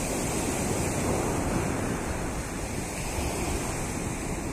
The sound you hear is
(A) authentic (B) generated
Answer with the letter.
A